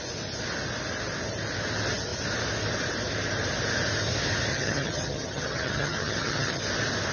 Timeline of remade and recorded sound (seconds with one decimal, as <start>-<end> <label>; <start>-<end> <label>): 0.0-4.5 recorded; 4.5-6.6 remade; 6.6-7.1 recorded